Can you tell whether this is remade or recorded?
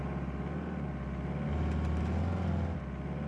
recorded